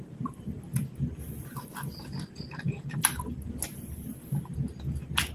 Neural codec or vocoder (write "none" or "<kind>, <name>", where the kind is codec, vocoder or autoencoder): none